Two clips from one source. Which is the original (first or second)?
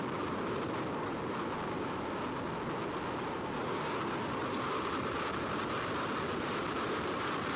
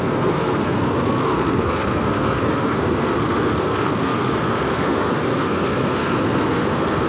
first